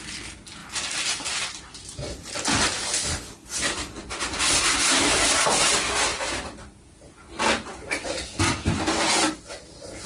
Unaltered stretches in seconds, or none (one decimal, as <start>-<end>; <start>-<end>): 0.0-0.6; 1.5-6.1; 7.1-10.1